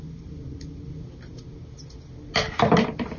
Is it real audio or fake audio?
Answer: real